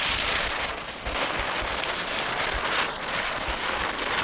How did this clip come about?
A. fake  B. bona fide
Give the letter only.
B